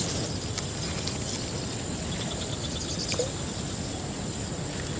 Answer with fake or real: real